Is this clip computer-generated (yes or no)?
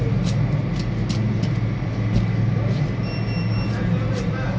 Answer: no